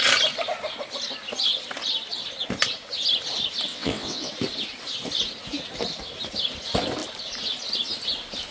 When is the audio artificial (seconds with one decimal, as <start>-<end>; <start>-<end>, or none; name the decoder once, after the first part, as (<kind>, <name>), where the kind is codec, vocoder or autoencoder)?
3.7-4.3 (vocoder, WaveNeXt)